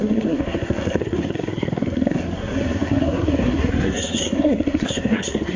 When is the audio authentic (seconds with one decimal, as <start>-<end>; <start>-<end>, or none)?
none